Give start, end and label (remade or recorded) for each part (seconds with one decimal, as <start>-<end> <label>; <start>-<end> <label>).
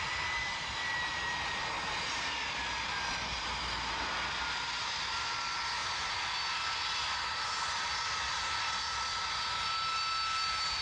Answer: 0.0-10.8 recorded